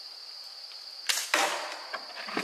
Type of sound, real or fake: real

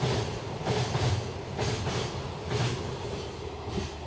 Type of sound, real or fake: real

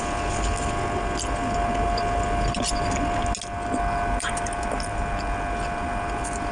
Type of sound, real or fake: real